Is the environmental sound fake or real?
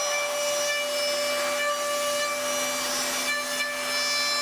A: real